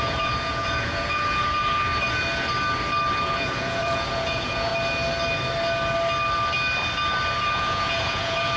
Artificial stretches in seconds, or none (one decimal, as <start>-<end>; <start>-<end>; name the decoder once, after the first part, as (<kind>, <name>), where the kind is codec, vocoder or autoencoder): 0.0-1.9 (vocoder, Vocos); 3.2-4.7; 7.4-8.6

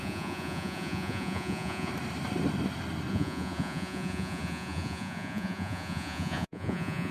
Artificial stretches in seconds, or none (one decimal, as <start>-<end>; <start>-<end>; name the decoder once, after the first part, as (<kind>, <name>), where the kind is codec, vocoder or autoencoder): 0.0-1.9 (vocoder, Vocos); 3.1-7.1

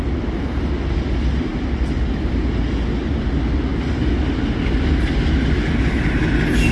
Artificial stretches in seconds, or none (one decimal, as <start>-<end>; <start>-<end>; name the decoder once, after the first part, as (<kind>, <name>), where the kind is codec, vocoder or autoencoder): none